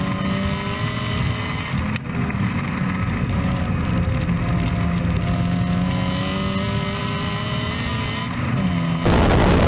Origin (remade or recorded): recorded